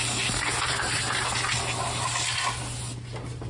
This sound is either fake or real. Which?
real